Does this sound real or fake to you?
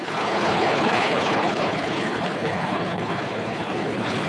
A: fake